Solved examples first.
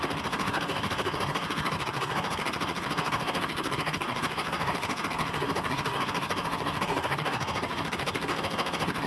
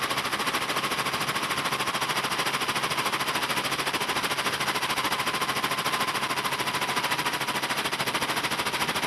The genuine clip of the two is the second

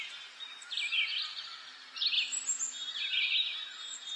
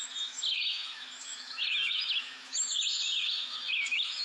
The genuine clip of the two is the first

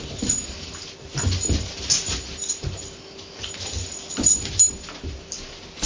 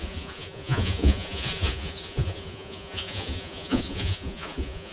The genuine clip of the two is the first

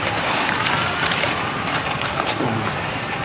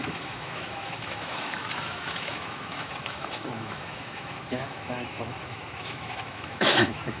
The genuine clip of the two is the first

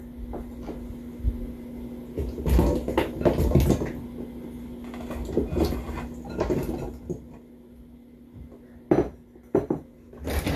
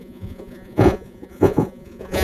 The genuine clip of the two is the first